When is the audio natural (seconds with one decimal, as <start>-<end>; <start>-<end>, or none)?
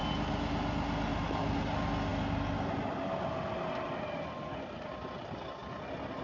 0.0-6.2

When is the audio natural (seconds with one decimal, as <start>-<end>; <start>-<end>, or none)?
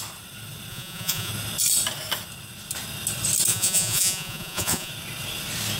0.0-0.7; 1.3-3.5; 4.9-5.8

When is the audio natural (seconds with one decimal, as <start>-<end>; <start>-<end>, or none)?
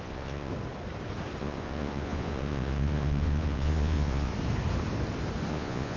0.5-1.4; 4.3-5.5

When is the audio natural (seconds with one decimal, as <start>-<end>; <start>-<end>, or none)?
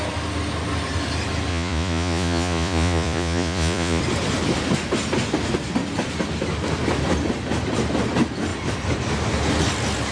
0.0-1.5; 4.0-10.1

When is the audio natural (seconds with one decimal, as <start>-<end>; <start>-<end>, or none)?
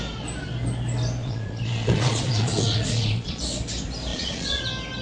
0.0-1.2; 3.4-4.1; 4.6-5.0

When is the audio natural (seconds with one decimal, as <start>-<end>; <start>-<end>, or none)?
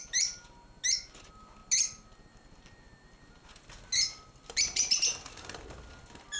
0.0-6.4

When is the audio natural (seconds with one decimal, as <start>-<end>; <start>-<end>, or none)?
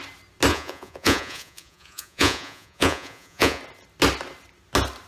0.0-0.5; 3.6-5.1